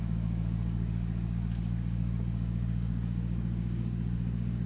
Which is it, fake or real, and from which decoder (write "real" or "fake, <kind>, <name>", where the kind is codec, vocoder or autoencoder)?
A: fake, codec, DAC